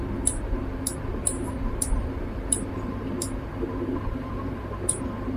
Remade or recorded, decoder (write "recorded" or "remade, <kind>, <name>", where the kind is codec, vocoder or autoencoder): recorded